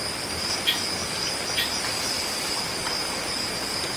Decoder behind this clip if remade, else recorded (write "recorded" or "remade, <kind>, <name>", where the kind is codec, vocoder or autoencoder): recorded